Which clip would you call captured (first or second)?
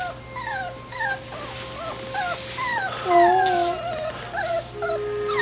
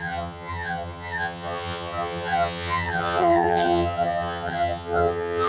first